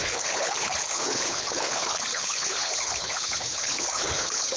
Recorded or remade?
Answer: remade